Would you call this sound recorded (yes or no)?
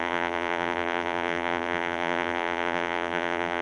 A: no